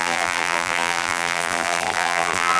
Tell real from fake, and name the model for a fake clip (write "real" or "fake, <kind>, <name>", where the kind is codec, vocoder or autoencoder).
fake, vocoder, BigVGAN v2